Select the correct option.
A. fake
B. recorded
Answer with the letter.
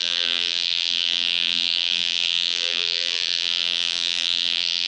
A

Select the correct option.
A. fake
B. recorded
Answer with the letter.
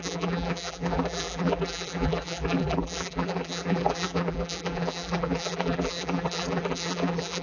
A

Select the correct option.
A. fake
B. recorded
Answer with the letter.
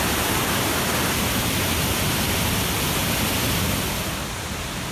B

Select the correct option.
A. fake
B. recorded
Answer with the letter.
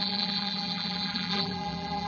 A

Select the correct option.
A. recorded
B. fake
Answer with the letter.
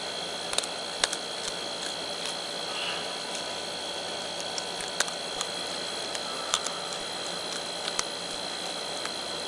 A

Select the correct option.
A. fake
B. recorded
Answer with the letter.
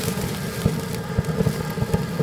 B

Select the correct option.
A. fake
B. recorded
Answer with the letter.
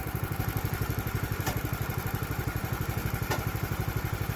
A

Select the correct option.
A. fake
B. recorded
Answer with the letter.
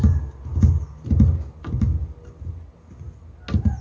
B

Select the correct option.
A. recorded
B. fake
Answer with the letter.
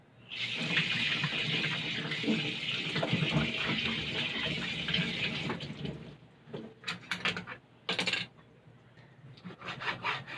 A